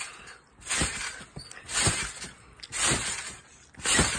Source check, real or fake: real